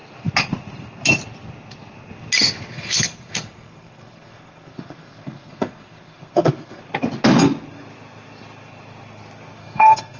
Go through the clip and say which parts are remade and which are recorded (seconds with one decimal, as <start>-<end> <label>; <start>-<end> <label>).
0.0-2.7 recorded; 2.7-6.8 remade; 6.8-9.6 recorded; 9.6-10.2 remade